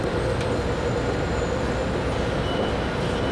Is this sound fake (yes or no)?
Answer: no